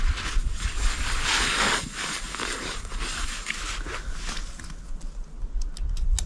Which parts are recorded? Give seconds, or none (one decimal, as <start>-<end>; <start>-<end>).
0.0-0.4; 3.5-6.3